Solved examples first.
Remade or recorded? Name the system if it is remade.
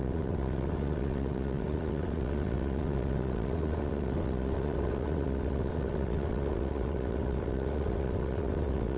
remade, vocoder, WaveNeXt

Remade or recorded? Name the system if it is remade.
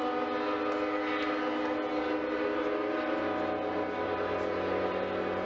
recorded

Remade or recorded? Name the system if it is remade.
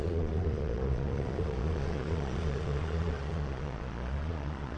remade, vocoder, Vocos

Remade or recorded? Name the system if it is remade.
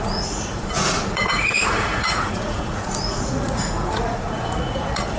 remade, vocoder, Vocos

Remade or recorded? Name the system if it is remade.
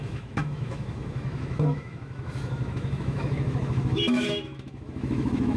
remade, autoencoder, DAC-VAE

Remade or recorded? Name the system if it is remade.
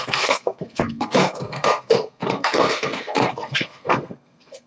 remade, codec, SNAC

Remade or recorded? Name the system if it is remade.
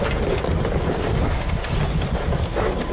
recorded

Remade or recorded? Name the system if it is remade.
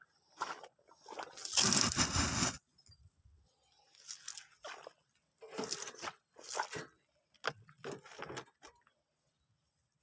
recorded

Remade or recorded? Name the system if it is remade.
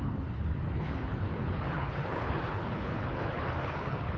remade, codec, HILCodec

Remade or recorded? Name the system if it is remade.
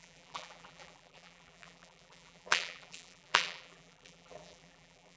remade, vocoder, BigVGAN v2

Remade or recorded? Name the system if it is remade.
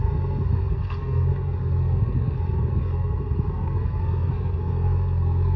remade, codec, SNAC